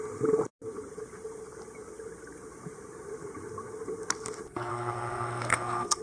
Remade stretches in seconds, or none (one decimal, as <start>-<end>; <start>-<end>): 4.7-6.0